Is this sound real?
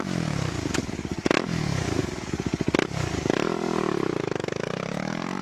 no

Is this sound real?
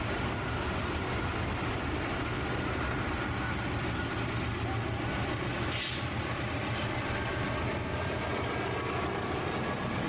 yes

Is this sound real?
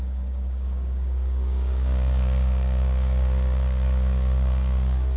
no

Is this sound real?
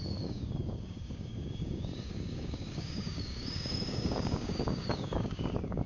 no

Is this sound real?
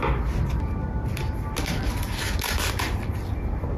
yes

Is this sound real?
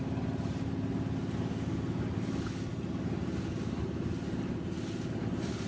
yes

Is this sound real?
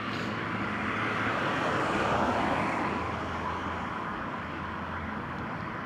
no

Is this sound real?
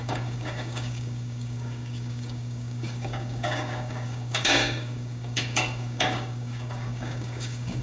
no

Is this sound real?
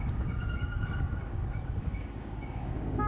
no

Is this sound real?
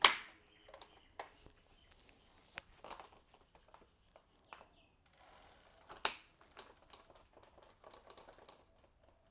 yes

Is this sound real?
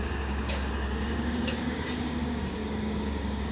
no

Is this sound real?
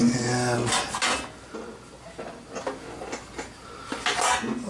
yes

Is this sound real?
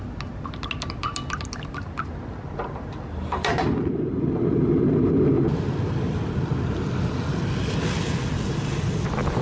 yes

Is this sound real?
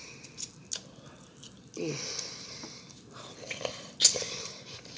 yes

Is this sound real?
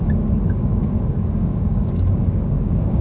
no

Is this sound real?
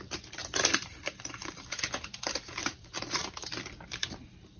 yes